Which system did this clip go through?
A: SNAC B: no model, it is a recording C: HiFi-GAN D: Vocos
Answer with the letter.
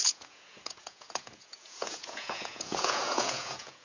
D